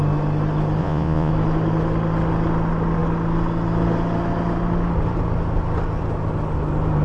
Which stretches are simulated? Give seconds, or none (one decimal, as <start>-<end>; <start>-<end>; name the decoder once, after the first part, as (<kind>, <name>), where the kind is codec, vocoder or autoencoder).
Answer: 0.8-1.3 (vocoder, Vocos)